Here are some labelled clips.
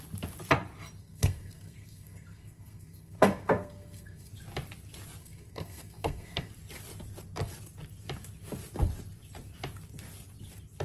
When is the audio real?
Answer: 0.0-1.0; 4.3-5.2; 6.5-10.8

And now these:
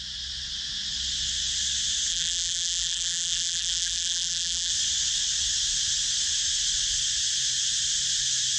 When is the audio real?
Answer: 0.0-2.1; 4.7-8.6

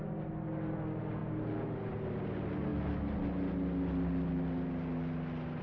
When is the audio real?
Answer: 0.0-5.6

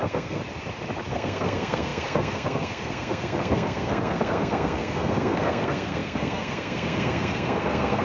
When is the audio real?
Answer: 0.4-1.1

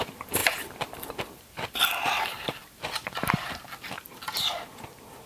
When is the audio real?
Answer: 4.1-5.3

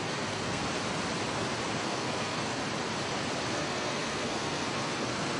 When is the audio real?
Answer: 0.6-1.8; 2.6-3.5

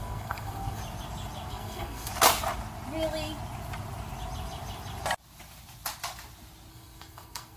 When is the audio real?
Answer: 0.8-1.5; 2.1-6.7

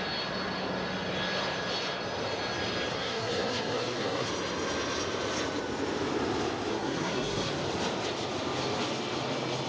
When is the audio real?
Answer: 0.0-2.9; 4.3-6.7; 7.5-9.7